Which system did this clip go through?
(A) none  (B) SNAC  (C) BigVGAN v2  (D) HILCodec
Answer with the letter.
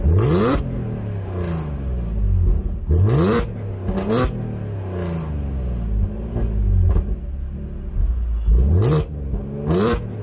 A